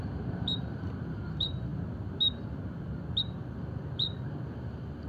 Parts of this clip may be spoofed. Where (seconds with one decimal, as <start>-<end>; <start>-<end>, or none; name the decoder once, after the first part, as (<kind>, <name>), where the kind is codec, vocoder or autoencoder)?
0.0-1.7 (vocoder, BigVGAN v2); 3.2-5.1